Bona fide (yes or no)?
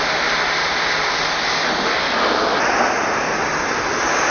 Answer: yes